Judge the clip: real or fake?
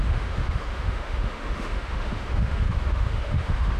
fake